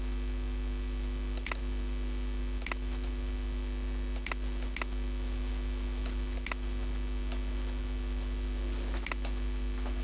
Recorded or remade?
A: recorded